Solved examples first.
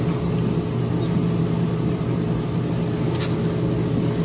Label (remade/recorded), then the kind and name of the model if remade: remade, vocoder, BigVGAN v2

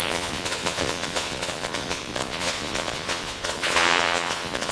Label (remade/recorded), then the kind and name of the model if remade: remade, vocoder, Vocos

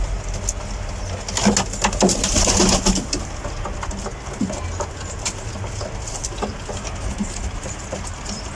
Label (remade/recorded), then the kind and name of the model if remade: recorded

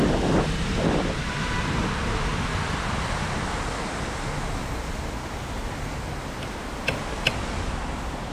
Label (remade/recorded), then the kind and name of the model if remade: recorded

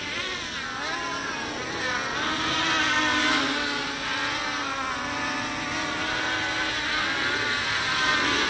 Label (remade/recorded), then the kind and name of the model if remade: recorded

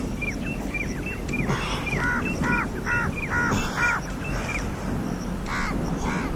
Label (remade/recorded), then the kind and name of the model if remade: remade, vocoder, BigVGAN v2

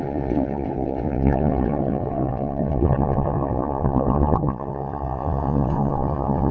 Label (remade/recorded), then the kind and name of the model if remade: remade, vocoder, WaveNeXt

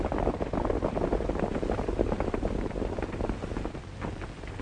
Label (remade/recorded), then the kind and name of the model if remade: recorded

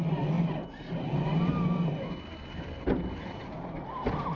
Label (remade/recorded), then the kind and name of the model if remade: recorded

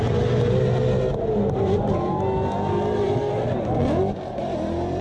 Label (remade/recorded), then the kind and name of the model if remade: recorded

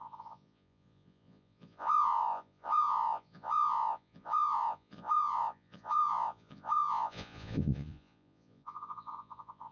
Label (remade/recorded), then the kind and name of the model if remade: remade, vocoder, Vocos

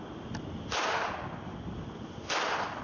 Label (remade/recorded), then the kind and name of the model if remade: recorded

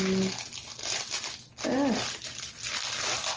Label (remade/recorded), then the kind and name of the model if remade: recorded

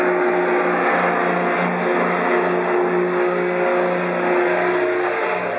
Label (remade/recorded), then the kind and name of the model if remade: recorded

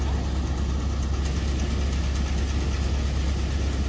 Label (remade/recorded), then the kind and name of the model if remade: recorded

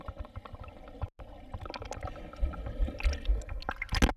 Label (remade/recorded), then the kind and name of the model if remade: recorded